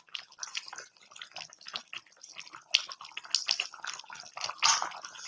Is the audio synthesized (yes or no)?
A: no